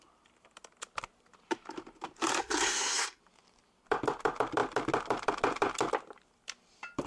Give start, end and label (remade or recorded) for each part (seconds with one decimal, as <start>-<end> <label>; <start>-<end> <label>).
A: 0.0-2.4 recorded; 2.4-3.2 remade; 3.2-7.1 recorded